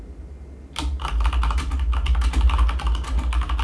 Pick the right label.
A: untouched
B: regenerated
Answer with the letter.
A